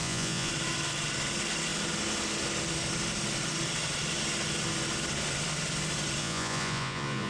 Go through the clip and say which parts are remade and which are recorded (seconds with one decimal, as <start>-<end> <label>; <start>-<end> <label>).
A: 0.0-0.5 remade; 0.5-6.2 recorded; 6.2-7.3 remade